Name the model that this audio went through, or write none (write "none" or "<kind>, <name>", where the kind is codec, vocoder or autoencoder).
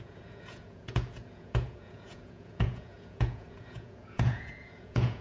vocoder, Vocos